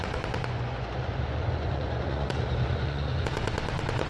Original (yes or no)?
no